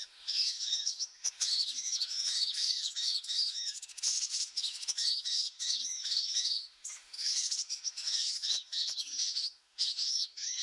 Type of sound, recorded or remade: remade